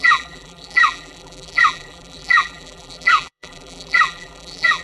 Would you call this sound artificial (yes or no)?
yes